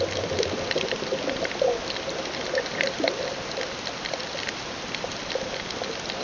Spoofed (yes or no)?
no